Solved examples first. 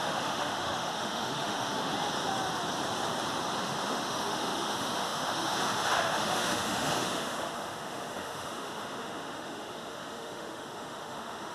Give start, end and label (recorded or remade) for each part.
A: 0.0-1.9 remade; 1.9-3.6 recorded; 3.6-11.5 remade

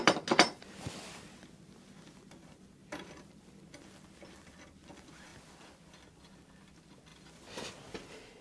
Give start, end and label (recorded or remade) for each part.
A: 0.0-8.4 recorded

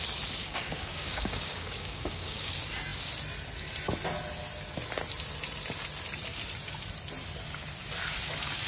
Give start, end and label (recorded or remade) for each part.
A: 0.0-0.4 recorded; 0.4-2.5 remade; 2.5-8.7 recorded

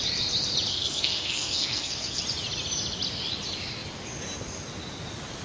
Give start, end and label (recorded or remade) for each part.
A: 0.0-0.7 recorded; 0.7-2.2 remade; 2.2-5.4 recorded

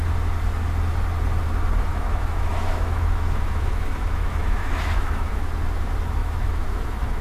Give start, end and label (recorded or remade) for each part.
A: 0.0-1.9 recorded; 1.9-5.5 remade; 5.5-6.2 recorded; 6.2-7.2 remade

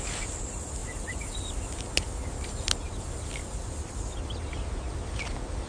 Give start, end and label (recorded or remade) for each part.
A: 0.0-5.7 recorded